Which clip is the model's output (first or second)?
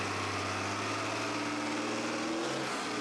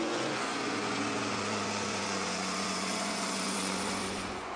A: second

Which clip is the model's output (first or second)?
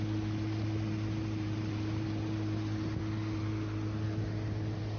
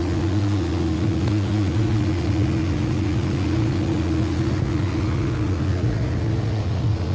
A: second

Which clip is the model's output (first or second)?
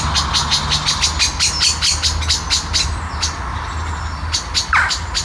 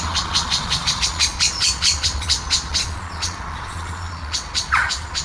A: second